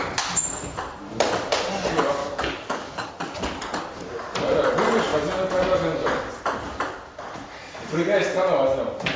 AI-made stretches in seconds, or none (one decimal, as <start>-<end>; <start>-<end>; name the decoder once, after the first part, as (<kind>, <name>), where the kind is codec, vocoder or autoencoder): 2.2-3.1 (codec, DAC)